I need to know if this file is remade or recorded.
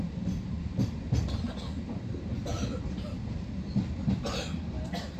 recorded